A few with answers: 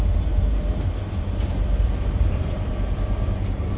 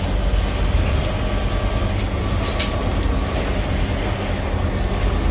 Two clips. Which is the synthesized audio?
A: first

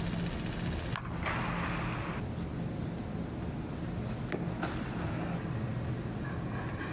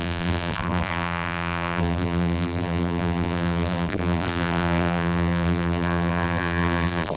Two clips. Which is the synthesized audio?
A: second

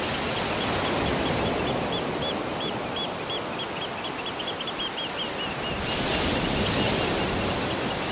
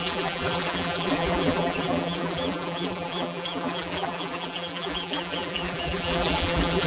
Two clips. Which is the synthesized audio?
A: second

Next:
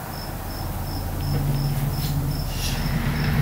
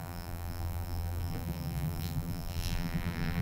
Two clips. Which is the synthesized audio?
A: second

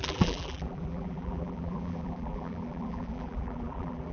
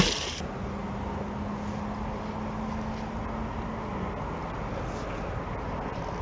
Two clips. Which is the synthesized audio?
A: first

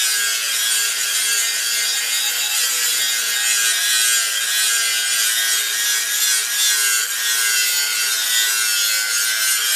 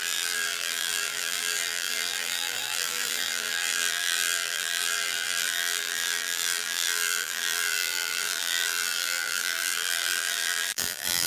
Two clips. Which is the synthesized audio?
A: second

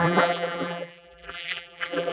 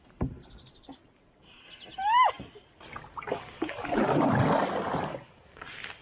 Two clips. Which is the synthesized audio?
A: first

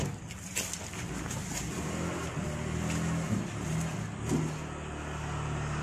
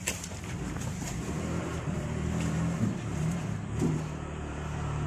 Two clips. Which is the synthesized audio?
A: second